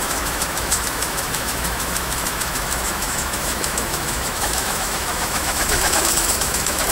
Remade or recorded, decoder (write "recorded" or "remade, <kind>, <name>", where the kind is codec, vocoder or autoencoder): remade, autoencoder, DAC-VAE